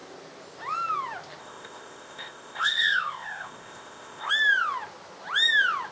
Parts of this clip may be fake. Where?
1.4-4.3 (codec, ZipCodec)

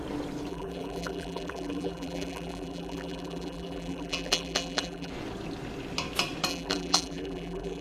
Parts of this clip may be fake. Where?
0.5-5.1 (vocoder, BigVGAN v2); 6.5-7.8

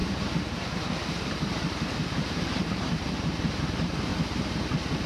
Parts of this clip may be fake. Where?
0.0-3.1 (vocoder, BigVGAN v2)